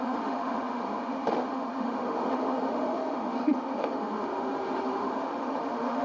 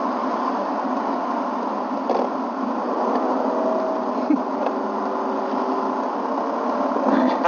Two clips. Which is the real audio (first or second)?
second